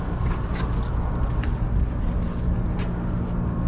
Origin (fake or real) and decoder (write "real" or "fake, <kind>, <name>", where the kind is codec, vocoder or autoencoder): real